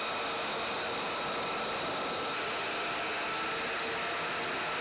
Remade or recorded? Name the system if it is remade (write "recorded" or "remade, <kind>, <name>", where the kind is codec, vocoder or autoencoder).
recorded